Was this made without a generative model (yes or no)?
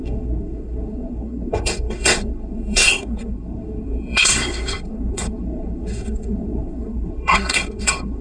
no